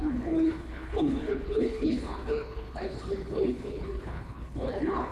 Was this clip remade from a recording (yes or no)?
yes